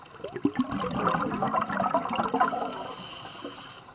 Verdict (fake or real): real